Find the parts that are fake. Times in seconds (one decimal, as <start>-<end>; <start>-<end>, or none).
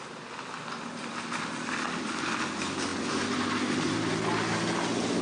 none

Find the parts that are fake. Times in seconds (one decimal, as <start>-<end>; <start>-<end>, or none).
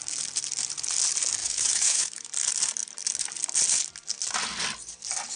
1.4-2.3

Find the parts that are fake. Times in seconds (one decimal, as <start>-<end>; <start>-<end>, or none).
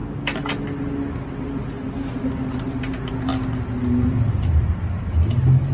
none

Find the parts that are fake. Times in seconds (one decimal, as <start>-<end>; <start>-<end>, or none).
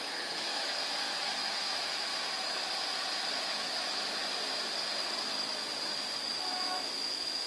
0.0-0.8; 1.5-2.1; 3.5-4.2; 6.5-7.5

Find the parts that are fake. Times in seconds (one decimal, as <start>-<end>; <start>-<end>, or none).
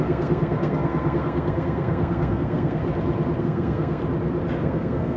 0.0-2.8; 3.4-4.0; 4.6-5.2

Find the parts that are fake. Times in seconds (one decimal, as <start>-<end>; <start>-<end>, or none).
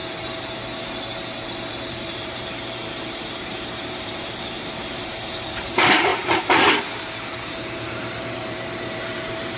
1.7-6.1; 7.2-9.6